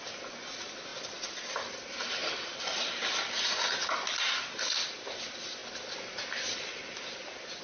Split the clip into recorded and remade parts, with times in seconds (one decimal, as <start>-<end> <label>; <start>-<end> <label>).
0.0-7.6 recorded